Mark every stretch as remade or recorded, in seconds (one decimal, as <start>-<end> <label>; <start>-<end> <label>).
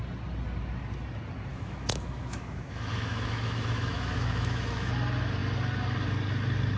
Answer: 0.0-1.5 recorded; 1.5-4.9 remade; 4.9-6.8 recorded